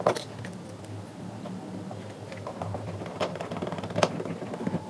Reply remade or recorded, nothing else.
recorded